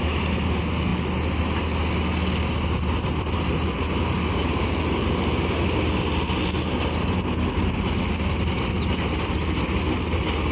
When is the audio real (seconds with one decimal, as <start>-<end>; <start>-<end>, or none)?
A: 0.0-10.5